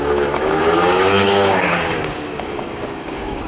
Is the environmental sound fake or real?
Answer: fake